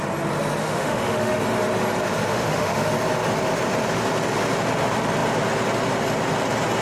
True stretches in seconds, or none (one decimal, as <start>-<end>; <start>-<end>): 0.0-0.6; 1.4-2.3; 2.9-6.8